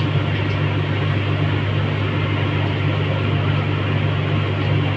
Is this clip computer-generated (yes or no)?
no